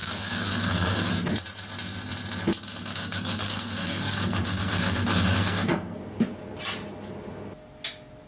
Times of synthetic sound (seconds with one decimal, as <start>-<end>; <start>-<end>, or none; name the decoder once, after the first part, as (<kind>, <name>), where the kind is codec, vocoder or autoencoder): 0.0-1.1 (codec, SNAC); 2.9-6.0